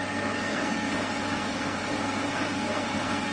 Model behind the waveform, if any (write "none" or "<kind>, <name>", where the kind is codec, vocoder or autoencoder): codec, SNAC